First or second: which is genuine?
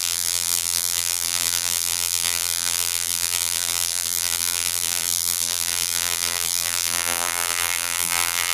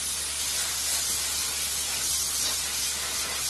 second